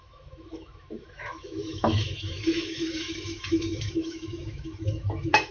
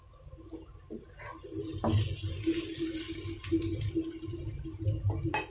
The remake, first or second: first